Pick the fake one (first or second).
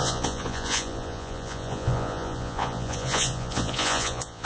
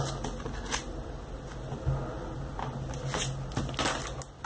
first